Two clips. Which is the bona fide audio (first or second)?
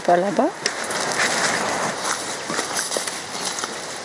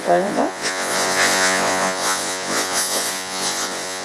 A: first